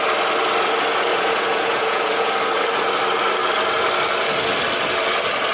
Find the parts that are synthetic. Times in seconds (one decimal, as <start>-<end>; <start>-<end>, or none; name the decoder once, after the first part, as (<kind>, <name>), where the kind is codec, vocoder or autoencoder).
1.1-2.4 (vocoder, Vocos)